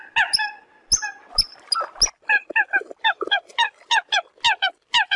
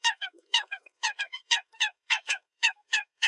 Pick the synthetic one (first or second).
second